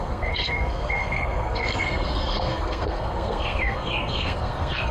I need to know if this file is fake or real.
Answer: fake